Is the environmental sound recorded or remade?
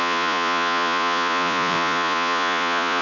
remade